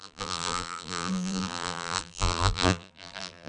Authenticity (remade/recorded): remade